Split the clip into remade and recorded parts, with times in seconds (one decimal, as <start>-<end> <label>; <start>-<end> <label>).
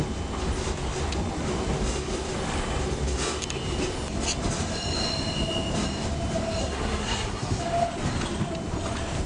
0.0-6.6 recorded; 6.6-7.6 remade; 7.6-9.3 recorded